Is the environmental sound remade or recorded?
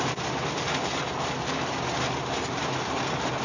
recorded